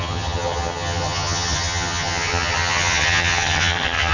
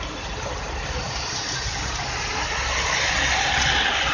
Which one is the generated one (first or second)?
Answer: first